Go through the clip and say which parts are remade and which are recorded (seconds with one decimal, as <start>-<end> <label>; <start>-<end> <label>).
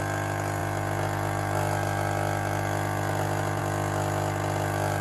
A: 0.0-5.0 recorded